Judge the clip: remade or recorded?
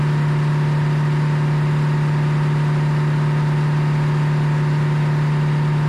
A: recorded